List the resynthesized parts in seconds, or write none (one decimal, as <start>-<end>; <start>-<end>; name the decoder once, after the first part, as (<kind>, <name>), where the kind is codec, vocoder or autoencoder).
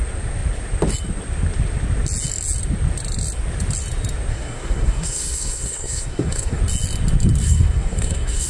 4.3-6.6 (codec, SNAC); 7.4-8.5